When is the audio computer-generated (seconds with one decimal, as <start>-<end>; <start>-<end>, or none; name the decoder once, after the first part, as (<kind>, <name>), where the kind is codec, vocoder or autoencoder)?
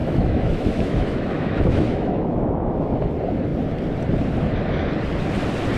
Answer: 0.0-3.1 (autoencoder, DAC-VAE)